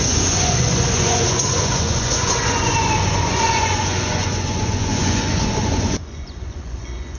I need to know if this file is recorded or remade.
remade